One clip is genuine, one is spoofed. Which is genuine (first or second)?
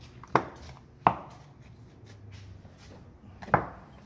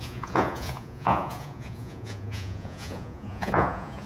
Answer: first